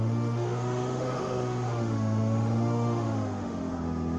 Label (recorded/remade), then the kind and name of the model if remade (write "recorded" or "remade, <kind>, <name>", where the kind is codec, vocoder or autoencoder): remade, autoencoder, DAC-VAE